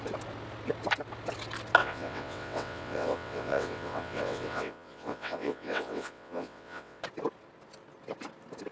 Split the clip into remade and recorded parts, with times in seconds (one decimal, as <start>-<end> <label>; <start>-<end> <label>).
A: 0.0-1.8 recorded; 1.8-7.0 remade; 7.0-8.7 recorded